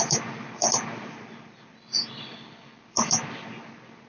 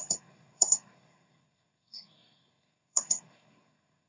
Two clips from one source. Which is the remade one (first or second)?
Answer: second